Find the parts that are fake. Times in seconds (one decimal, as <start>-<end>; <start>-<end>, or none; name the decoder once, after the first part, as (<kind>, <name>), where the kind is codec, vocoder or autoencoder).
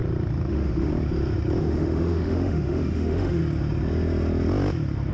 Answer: 0.5-0.9 (autoencoder, DAC-VAE); 1.6-3.4